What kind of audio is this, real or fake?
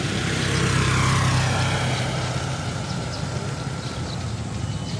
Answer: real